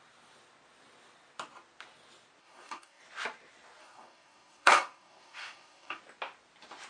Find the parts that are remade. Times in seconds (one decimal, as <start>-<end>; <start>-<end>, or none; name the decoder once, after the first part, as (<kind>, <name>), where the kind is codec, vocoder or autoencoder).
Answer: 2.4-3.0 (codec, DAC); 3.8-6.0

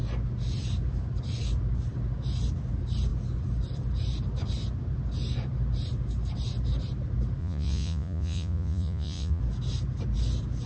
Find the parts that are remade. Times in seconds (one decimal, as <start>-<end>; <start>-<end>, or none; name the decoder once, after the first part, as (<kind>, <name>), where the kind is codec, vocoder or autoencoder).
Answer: 7.4-9.4 (vocoder, Vocos)

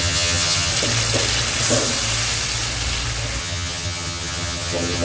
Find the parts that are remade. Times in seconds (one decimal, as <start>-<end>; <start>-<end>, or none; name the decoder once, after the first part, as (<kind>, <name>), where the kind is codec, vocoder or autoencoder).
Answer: 0.0-0.7 (vocoder, HiFi-GAN); 3.4-5.0

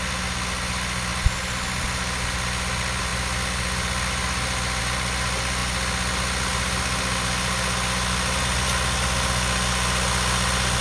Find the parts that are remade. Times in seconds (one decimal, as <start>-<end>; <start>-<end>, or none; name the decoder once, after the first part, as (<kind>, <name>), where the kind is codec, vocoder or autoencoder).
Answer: none

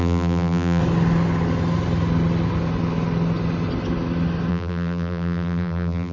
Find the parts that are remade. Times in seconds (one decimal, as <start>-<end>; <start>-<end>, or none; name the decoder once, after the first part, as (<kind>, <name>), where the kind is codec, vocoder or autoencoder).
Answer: 0.0-0.8 (vocoder, BigVGAN v2); 4.5-6.1

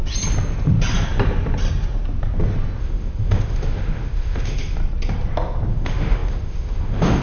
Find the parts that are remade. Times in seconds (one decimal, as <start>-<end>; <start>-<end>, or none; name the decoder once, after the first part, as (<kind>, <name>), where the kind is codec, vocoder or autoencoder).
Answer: 2.8-4.8 (autoencoder, DAC-VAE); 5.7-7.2